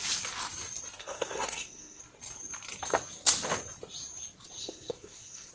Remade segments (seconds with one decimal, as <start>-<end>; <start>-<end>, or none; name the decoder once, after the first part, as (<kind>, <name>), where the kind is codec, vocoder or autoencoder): 1.0-2.0 (codec, SNAC); 4.6-5.5